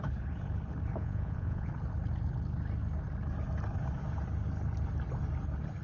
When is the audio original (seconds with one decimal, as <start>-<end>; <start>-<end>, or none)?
0.0-1.0; 1.7-5.8